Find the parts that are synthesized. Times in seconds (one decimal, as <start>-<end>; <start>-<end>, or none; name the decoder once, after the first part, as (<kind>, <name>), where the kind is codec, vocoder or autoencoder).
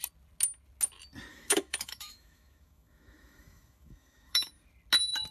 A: 1.3-4.5 (autoencoder, DAC-VAE)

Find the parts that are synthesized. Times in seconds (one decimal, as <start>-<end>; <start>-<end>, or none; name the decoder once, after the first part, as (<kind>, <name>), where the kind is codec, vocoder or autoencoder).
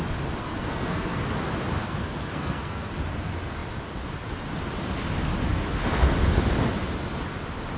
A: 0.4-1.2 (codec, SNAC); 1.8-2.9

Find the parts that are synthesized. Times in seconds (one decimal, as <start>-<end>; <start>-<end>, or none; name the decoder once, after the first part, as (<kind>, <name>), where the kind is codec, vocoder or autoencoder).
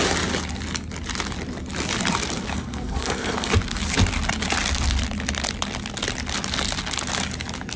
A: 2.5-3.5 (codec, SNAC)